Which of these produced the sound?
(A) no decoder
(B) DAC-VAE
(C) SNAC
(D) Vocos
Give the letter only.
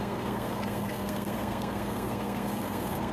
C